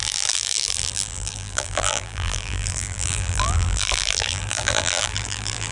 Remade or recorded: remade